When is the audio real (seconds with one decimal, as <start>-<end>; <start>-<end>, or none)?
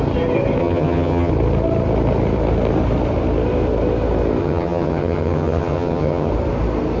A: 0.0-0.6; 1.3-4.4; 6.3-7.0